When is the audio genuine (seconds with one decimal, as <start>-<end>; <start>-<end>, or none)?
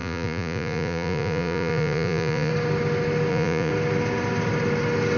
2.5-3.3; 3.7-5.2